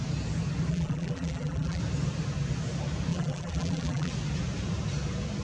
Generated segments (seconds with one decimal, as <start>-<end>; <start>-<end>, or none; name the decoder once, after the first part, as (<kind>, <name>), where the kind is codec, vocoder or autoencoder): 0.7-1.8 (vocoder, BigVGAN v2); 3.1-4.1